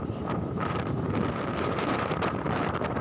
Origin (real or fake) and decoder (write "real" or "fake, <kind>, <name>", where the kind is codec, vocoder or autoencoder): fake, vocoder, BigVGAN v2